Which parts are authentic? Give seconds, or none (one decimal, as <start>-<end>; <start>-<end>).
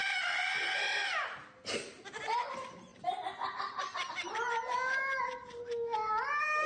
0.0-6.7